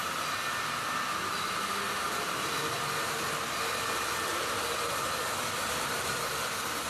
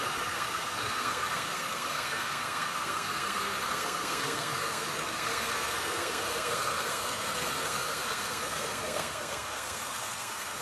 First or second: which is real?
first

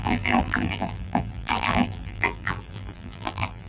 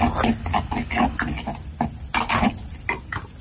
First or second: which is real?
second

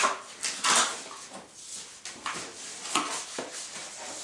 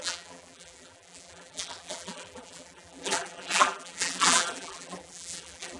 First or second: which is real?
first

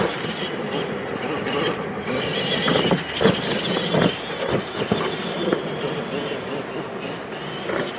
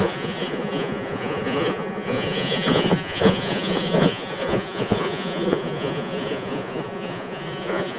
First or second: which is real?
first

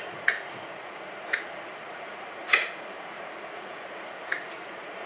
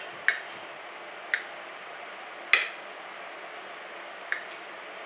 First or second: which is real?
second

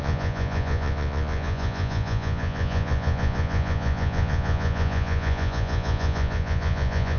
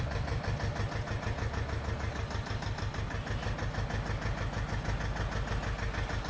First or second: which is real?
second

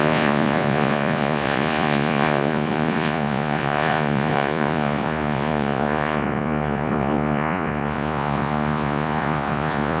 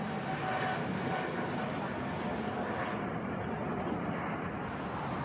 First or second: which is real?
second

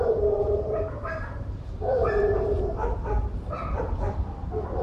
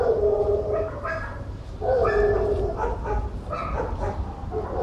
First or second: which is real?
second